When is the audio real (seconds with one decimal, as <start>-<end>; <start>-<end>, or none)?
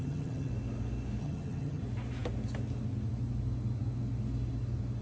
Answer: 0.5-1.2; 1.8-5.0